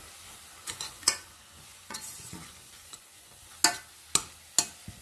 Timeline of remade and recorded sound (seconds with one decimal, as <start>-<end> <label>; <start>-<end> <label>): 0.0-0.6 recorded; 0.6-3.5 remade; 3.5-5.0 recorded